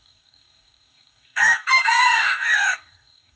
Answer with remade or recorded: remade